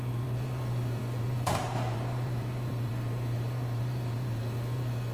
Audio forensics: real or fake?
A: fake